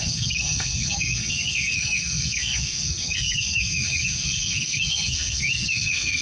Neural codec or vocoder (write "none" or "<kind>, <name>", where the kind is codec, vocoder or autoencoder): codec, SNAC